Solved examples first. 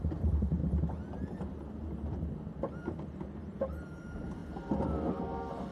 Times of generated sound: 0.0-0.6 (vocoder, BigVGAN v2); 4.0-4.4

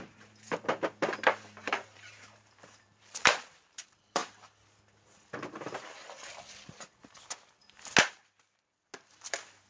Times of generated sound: 0.0-4.2 (vocoder, BigVGAN v2); 9.1-9.7

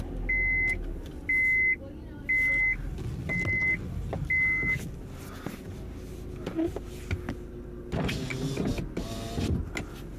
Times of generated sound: none

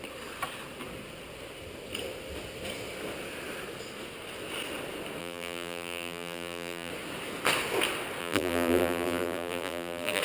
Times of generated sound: 5.2-6.9 (vocoder, BigVGAN v2); 8.2-10.2

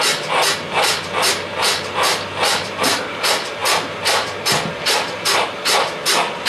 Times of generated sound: 0.0-6.5 (vocoder, BigVGAN v2)

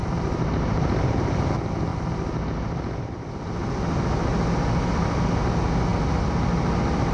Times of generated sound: 0.0-1.5 (vocoder, BigVGAN v2)